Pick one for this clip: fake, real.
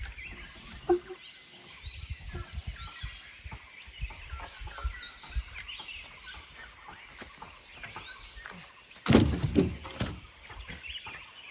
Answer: real